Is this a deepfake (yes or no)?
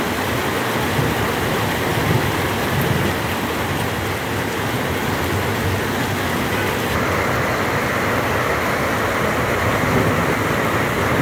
no